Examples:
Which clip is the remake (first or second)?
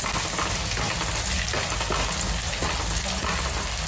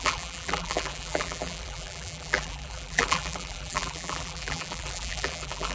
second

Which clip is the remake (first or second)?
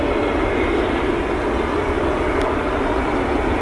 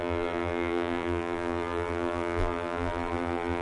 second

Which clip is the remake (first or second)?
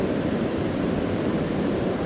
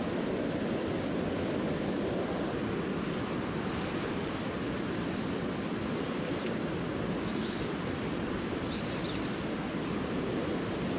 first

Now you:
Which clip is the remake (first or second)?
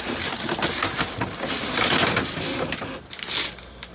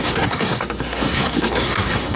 second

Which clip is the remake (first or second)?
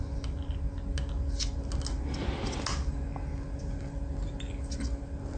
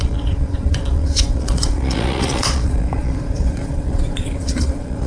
second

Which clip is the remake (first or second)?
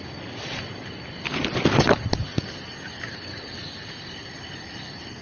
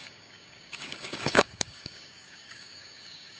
second